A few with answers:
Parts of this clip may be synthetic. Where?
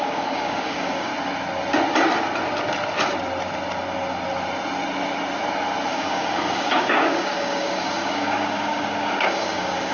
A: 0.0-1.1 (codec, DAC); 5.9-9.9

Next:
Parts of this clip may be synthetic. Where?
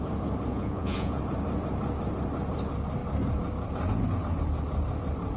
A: 0.5-1.2 (vocoder, Vocos)